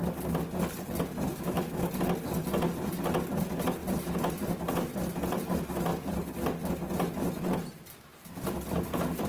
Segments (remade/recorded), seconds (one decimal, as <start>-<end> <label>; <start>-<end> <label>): 0.0-1.3 recorded; 1.3-1.9 remade; 1.9-9.3 recorded